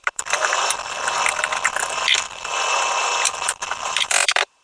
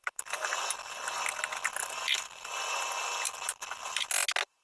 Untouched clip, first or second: second